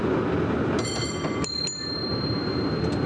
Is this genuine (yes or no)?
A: yes